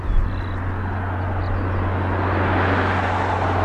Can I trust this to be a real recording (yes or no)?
yes